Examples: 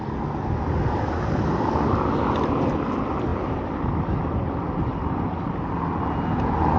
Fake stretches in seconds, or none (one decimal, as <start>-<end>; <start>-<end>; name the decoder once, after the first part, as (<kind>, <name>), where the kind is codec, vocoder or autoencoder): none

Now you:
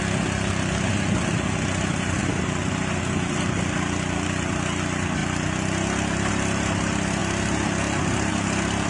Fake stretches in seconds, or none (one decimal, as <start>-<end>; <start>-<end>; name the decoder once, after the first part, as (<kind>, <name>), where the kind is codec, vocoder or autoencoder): none

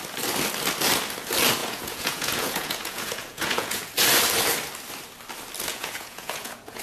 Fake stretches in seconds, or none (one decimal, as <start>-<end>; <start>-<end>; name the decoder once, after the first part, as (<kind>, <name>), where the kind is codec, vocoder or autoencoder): 1.6-3.9 (vocoder, Vocos); 5.7-6.8

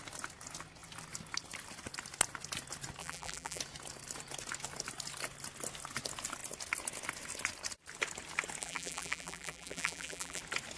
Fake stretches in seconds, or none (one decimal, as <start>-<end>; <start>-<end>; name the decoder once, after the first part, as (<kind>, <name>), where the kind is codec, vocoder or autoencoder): 3.0-3.6 (vocoder, BigVGAN v2); 8.6-10.4

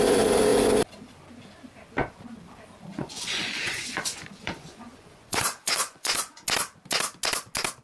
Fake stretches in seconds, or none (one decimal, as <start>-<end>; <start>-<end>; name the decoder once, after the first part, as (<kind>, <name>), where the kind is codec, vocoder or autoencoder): 2.9-6.4 (vocoder, Vocos)

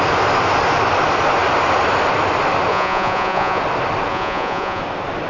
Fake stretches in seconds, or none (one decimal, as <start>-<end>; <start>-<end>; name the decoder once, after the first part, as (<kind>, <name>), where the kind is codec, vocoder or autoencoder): 2.7-3.6 (vocoder, Vocos); 4.1-4.8

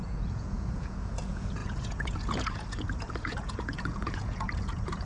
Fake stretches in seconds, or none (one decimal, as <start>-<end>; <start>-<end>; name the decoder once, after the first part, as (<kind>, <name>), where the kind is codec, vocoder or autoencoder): 0.0-5.0 (vocoder, Vocos)